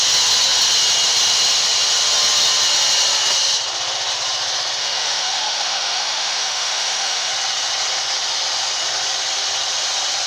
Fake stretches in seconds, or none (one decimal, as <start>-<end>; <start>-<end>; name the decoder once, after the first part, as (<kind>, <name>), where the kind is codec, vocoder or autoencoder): 4.8-7.3 (autoencoder, DAC-VAE)